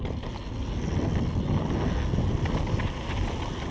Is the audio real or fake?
real